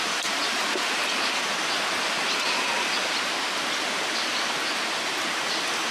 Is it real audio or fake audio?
real